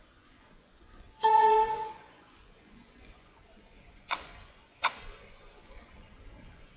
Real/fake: fake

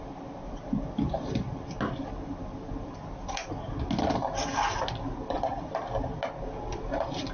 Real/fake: real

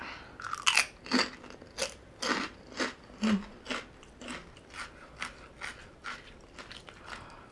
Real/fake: real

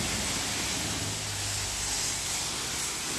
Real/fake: real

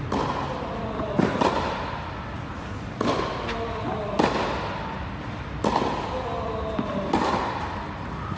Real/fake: real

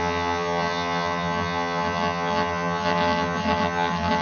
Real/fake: fake